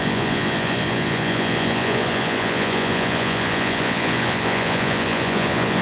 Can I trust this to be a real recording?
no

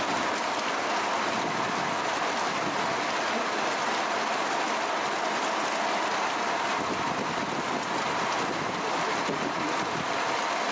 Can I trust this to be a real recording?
yes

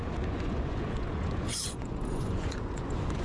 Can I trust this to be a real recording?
no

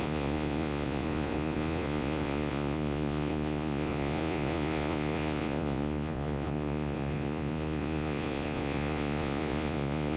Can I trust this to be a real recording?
no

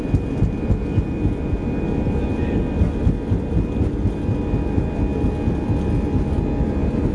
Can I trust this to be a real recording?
yes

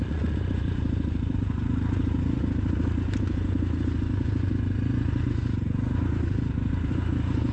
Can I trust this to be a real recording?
no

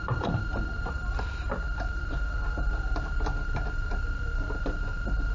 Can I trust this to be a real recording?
yes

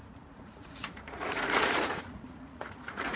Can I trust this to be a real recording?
no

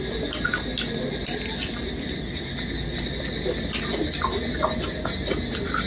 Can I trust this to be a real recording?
yes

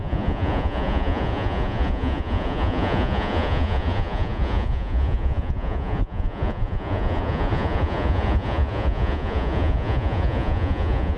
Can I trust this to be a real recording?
no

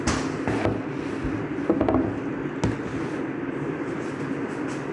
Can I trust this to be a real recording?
yes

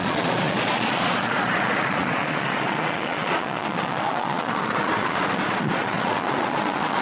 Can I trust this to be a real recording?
no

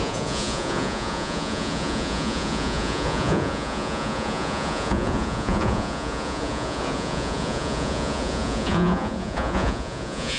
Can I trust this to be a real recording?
no